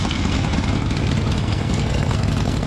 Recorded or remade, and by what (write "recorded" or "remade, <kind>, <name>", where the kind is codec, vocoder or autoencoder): remade, codec, SNAC